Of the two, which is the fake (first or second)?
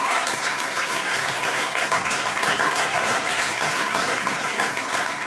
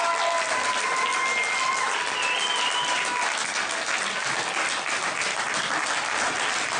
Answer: first